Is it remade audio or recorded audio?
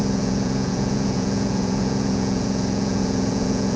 remade